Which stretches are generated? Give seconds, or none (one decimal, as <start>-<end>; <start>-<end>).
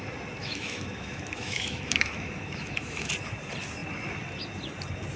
0.4-3.1